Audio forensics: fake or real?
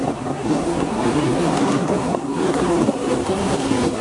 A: fake